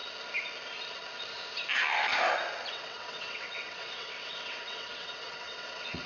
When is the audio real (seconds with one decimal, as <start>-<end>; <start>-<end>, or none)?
0.0-2.7